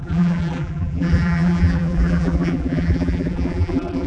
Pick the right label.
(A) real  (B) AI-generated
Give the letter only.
B